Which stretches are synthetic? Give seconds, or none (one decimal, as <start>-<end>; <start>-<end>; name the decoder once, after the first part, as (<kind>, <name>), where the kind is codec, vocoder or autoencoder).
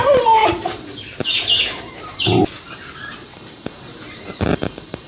0.0-5.1 (vocoder, BigVGAN v2)